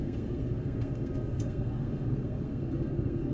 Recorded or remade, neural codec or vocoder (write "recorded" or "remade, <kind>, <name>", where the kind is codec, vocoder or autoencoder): remade, codec, SNAC